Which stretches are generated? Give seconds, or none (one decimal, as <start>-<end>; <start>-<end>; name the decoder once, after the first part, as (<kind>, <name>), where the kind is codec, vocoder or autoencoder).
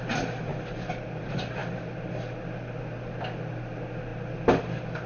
none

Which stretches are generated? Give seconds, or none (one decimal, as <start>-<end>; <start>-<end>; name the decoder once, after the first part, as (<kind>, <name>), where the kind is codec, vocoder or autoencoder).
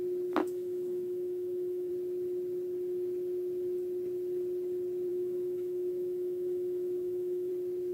0.4-1.9 (autoencoder, DAC-VAE); 5.1-7.5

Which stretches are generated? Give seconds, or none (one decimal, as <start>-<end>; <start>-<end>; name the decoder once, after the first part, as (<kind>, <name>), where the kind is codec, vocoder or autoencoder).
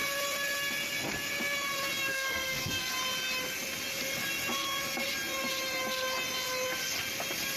2.1-2.9 (codec, SNAC)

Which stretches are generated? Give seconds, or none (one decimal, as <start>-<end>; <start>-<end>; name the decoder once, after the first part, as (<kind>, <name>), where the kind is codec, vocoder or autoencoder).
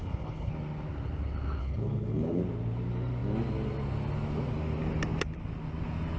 0.0-0.5 (codec, HILCodec); 1.6-2.4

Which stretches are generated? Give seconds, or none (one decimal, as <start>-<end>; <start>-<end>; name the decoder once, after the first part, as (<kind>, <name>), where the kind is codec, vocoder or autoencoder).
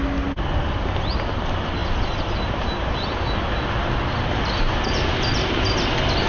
none